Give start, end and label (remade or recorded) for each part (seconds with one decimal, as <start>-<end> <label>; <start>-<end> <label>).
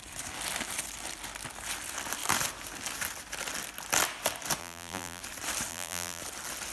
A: 0.0-4.6 recorded; 4.6-5.2 remade; 5.2-5.7 recorded; 5.7-6.2 remade; 6.2-6.7 recorded